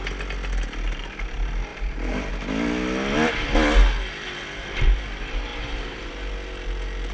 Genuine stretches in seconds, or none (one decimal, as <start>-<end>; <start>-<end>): 0.0-1.7; 2.3-5.5; 6.0-7.1